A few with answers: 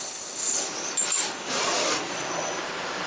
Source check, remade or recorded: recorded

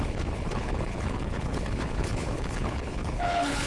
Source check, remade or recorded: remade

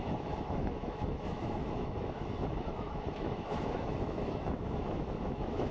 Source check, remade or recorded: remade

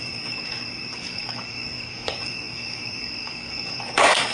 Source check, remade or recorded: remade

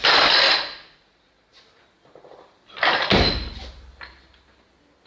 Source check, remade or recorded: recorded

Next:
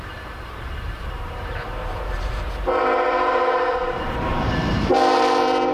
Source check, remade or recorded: remade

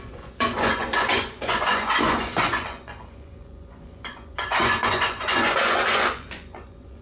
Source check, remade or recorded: remade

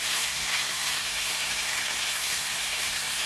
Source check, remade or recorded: remade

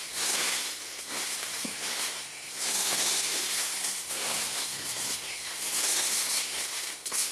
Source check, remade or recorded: remade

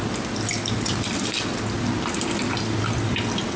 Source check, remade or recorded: recorded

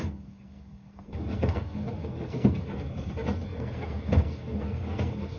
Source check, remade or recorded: remade